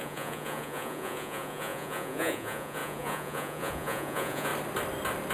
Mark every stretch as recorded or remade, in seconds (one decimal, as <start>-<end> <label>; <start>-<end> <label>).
0.0-4.5 remade; 4.5-5.3 recorded